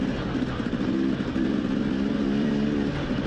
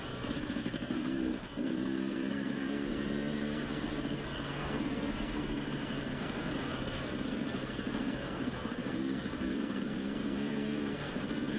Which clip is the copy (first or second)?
second